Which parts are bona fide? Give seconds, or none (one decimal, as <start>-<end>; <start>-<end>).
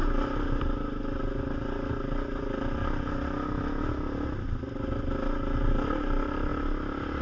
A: 0.0-7.2